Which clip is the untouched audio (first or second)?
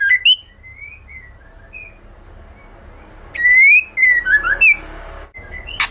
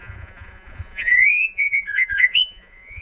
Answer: first